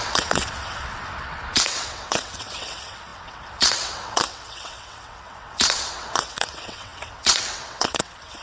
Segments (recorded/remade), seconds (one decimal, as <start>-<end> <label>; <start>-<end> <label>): 0.0-8.4 remade